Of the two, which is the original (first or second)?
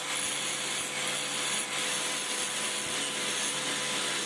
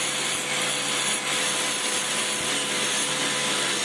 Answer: first